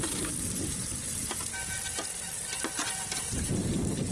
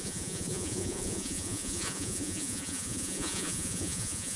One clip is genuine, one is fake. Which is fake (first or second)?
second